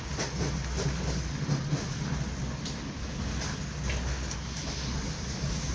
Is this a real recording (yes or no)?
yes